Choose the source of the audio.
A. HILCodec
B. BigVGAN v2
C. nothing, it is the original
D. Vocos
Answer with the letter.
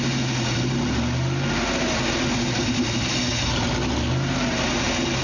C